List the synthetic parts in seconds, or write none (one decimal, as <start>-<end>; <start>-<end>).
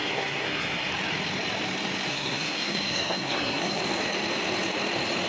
0.0-0.9; 2.1-3.8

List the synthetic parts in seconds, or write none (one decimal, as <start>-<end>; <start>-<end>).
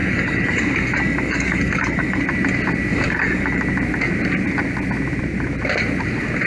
0.0-2.2; 2.9-3.6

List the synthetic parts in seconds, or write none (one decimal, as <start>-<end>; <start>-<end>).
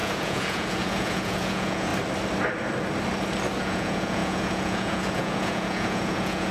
0.0-1.9; 3.6-6.5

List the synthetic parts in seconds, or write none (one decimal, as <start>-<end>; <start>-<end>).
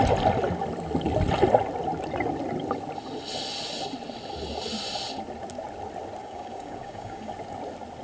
6.2-7.3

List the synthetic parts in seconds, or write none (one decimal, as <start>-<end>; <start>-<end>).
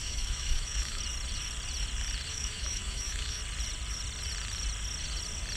0.0-1.0; 2.3-3.4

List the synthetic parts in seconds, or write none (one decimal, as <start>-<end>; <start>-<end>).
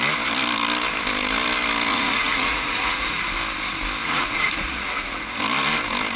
1.9-3.2; 4.0-5.4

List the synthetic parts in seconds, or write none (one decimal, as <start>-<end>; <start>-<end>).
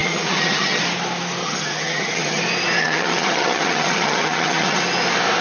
0.0-0.8; 1.4-2.4; 2.8-4.8